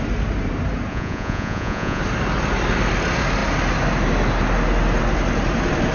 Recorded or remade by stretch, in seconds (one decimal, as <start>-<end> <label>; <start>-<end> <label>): 0.0-0.9 recorded; 0.9-2.0 remade; 2.0-5.9 recorded